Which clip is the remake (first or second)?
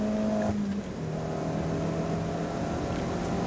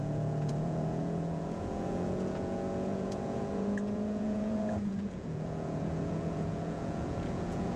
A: second